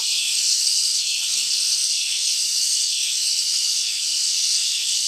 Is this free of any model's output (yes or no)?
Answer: no